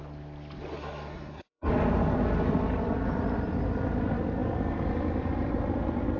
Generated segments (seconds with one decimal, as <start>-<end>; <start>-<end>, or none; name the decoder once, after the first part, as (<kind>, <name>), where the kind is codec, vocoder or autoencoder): 0.7-1.7 (codec, SNAC)